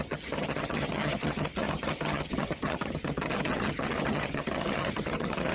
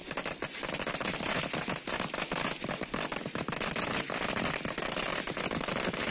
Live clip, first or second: second